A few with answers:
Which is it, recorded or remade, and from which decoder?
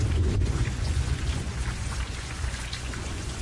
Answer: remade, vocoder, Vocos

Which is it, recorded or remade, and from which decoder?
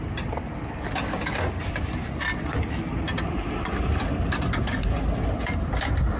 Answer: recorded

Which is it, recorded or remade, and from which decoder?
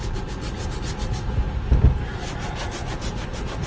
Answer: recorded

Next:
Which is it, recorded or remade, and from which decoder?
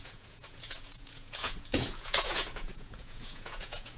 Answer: remade, vocoder, Vocos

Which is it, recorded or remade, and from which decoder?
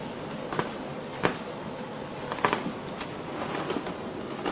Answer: recorded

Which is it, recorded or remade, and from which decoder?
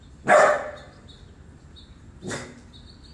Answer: recorded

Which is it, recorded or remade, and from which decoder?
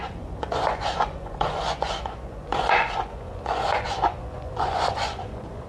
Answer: remade, vocoder, Vocos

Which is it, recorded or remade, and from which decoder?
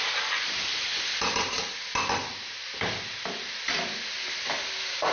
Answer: recorded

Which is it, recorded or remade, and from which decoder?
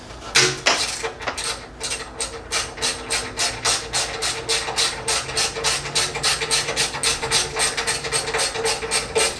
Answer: recorded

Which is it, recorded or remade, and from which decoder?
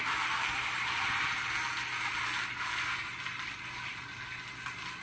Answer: recorded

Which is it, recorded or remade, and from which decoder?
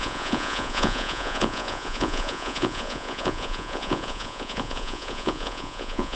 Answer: remade, vocoder, Vocos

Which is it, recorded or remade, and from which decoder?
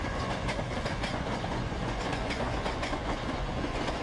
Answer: remade, vocoder, Vocos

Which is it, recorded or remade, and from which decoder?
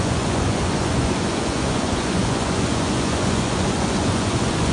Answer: remade, vocoder, Vocos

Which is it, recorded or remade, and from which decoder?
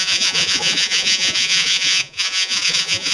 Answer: remade, vocoder, Vocos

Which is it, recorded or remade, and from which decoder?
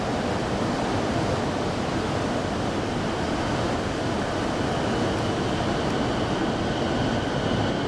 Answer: recorded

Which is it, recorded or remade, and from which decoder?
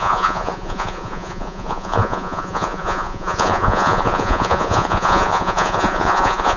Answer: remade, vocoder, Vocos